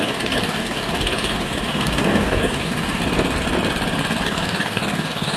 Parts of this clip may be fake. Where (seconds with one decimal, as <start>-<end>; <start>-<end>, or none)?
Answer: 0.0-3.0; 4.2-5.4